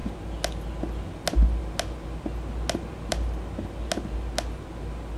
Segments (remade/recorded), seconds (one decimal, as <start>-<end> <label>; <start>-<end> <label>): 0.0-5.2 recorded

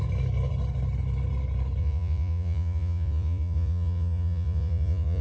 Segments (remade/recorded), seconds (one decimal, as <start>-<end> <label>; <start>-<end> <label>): 0.0-1.8 recorded; 1.8-5.2 remade

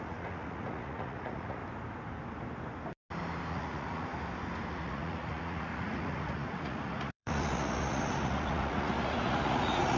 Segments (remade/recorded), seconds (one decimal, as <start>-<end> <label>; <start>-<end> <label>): 0.0-1.6 remade; 1.6-3.5 recorded; 3.5-4.1 remade; 4.1-4.7 recorded; 4.7-10.0 remade

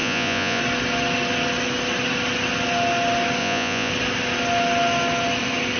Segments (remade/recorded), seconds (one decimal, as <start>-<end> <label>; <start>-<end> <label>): 0.0-0.6 remade; 0.6-3.4 recorded; 3.4-3.9 remade; 3.9-5.8 recorded

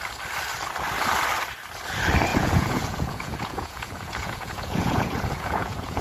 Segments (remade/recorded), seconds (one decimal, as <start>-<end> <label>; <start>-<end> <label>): 0.0-2.3 recorded; 2.3-6.0 remade

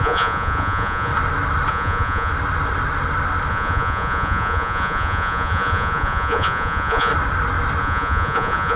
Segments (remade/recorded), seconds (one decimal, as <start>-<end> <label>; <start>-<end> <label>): 0.0-1.1 remade; 1.1-1.7 recorded; 1.7-2.3 remade; 2.3-3.5 recorded; 3.5-7.1 remade; 7.1-7.8 recorded; 7.8-8.8 remade